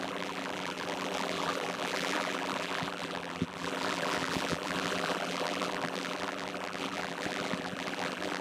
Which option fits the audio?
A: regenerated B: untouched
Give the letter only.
A